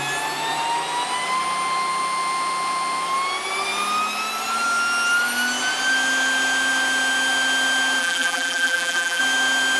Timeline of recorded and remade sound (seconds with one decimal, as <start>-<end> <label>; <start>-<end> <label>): 0.0-8.0 recorded; 8.0-9.2 remade; 9.2-9.8 recorded